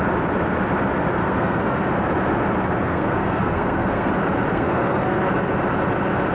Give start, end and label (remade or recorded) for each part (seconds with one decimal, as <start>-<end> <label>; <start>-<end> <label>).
0.0-1.2 recorded; 1.2-1.9 remade; 1.9-2.9 recorded; 2.9-4.1 remade; 4.1-4.5 recorded; 4.5-5.3 remade; 5.3-6.3 recorded

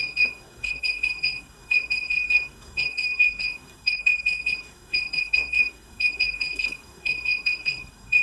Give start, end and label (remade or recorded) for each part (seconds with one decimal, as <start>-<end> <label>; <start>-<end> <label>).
0.0-8.2 remade

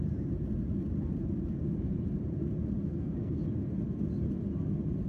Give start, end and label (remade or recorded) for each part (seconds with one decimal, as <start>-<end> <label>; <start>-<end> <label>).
0.0-2.9 recorded; 2.9-3.4 remade; 3.4-5.1 recorded

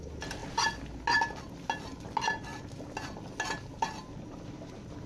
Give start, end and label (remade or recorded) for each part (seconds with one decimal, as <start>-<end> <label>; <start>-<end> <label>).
0.0-5.1 recorded